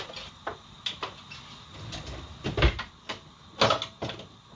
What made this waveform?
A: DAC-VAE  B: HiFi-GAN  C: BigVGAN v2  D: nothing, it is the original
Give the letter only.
D